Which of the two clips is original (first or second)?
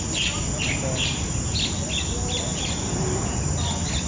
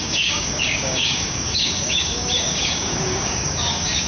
first